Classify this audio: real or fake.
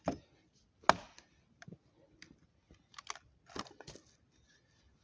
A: real